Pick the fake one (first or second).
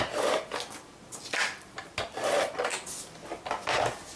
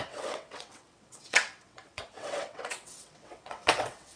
second